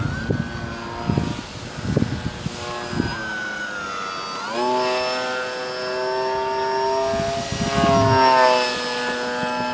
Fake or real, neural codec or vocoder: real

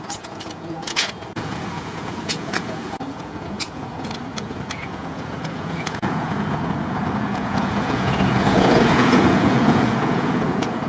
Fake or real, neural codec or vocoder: fake, vocoder, Vocos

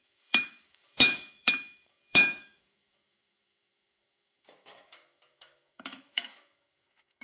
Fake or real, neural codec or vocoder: fake, autoencoder, DAC-VAE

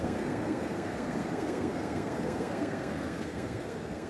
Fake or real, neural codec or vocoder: fake, codec, SNAC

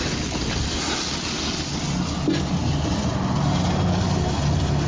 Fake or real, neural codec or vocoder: real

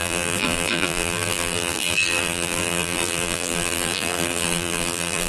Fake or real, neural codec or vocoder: fake, vocoder, BigVGAN v2